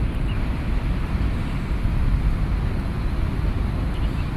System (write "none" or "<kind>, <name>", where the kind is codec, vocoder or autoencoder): none